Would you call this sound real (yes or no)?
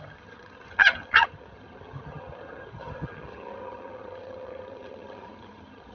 no